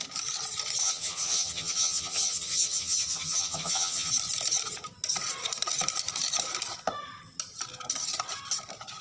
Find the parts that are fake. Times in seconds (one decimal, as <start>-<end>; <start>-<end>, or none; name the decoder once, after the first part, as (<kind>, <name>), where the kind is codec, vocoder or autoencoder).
0.8-4.1 (vocoder, HiFi-GAN)